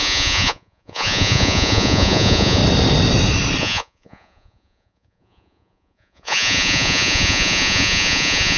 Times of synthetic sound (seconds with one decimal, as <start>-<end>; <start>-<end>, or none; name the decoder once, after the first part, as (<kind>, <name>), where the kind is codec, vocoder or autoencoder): 0.0-2.6 (vocoder, Vocos); 3.6-8.6